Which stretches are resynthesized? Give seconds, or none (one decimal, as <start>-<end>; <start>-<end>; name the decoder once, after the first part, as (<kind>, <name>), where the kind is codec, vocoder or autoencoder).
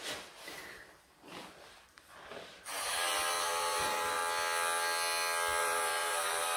0.0-4.2 (vocoder, BigVGAN v2); 5.6-6.6